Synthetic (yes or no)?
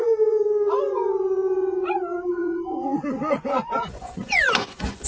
yes